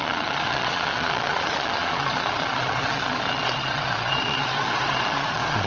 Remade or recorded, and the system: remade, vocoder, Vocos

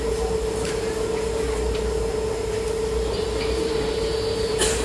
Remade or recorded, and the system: remade, vocoder, BigVGAN v2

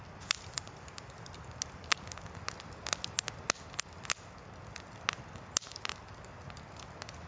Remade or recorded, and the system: recorded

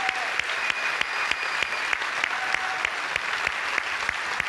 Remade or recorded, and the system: recorded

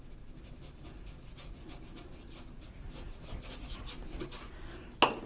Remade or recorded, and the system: recorded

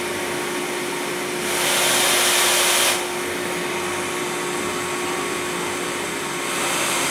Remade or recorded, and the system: recorded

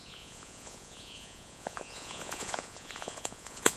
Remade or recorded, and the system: remade, vocoder, Vocos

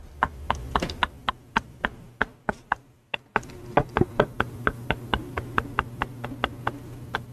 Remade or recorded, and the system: recorded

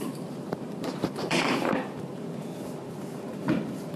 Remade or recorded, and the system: remade, vocoder, BigVGAN v2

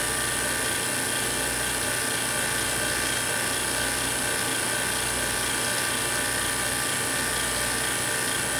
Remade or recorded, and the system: recorded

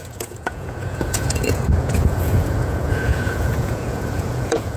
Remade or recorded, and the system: remade, vocoder, Vocos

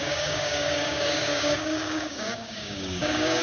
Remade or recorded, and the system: remade, codec, DAC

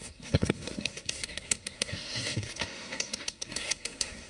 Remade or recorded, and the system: remade, codec, SNAC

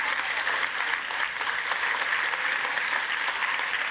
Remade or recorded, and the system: recorded